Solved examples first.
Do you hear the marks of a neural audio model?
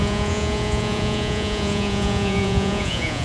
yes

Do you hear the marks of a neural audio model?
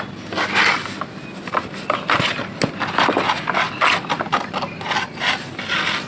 no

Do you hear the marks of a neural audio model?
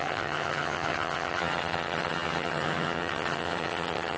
yes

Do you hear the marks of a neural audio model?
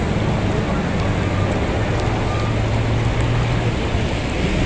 no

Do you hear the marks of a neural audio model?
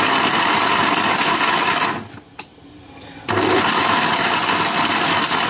no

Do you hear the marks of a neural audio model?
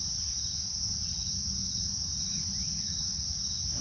no